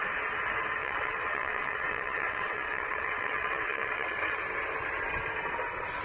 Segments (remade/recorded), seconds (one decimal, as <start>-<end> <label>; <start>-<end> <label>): 0.0-0.8 recorded; 0.8-4.4 remade; 4.4-6.0 recorded